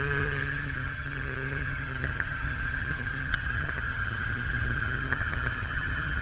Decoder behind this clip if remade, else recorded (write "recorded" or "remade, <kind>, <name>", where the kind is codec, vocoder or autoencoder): remade, vocoder, HiFi-GAN